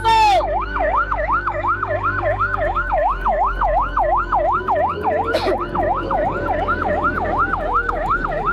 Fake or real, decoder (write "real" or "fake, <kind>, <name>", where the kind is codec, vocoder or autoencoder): fake, codec, DAC